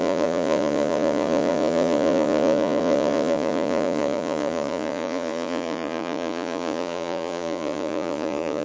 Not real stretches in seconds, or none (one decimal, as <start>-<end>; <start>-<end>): 0.0-8.6